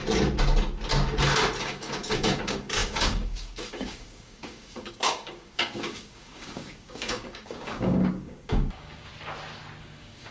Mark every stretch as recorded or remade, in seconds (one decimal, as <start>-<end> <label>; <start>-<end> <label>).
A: 0.0-1.6 recorded; 1.6-9.1 remade; 9.1-9.8 recorded; 9.8-10.3 remade